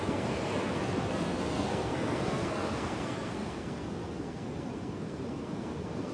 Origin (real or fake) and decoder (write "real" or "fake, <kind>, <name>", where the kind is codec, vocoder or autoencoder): fake, codec, SNAC